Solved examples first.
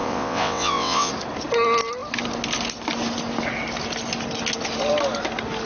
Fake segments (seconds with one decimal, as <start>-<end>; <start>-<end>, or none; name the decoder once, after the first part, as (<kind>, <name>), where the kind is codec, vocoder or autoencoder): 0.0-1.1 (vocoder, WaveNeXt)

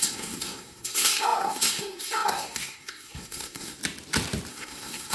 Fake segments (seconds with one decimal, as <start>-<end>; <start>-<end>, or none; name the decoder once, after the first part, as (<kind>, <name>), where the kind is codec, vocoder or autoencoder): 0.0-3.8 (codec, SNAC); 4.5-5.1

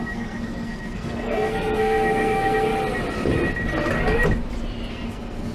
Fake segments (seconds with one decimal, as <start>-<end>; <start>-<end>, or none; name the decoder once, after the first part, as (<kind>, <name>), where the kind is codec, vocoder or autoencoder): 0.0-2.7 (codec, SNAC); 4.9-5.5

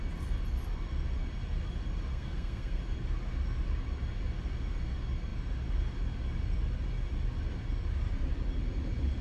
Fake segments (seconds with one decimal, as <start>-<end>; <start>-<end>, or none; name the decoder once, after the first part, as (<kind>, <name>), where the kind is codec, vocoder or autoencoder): 2.1-2.8 (codec, SNAC)

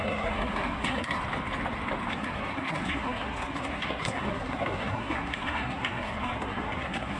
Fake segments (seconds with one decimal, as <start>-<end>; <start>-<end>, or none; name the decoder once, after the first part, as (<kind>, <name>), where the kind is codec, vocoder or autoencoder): 0.0-1.2 (codec, SNAC); 2.1-7.2

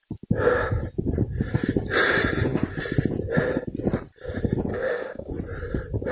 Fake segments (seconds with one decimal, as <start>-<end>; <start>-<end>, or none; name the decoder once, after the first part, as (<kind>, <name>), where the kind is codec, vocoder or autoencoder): 4.7-5.3 (autoencoder, DAC-VAE)

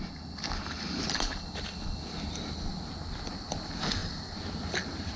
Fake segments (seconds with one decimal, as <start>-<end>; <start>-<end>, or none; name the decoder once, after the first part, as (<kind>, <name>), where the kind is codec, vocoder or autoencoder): none